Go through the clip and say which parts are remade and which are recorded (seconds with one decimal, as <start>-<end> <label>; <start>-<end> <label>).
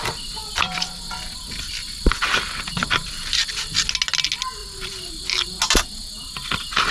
0.0-0.4 recorded; 0.4-3.5 remade; 3.5-4.6 recorded; 4.6-5.1 remade; 5.1-6.9 recorded